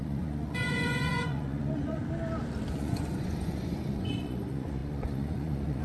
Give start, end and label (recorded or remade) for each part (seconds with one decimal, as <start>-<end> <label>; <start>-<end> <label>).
0.0-2.0 remade; 2.0-2.7 recorded; 2.7-5.8 remade